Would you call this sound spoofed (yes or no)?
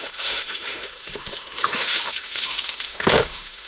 yes